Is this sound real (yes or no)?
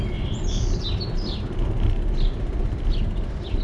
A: yes